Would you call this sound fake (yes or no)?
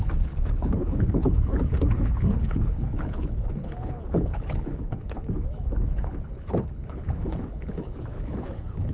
yes